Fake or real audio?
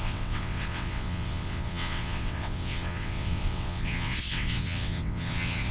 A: fake